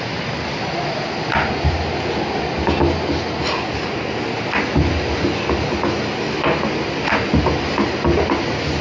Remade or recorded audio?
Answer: recorded